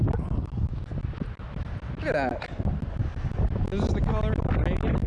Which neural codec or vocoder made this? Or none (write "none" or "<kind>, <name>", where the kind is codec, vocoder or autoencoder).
none